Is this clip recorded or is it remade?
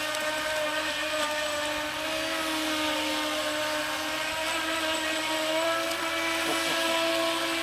recorded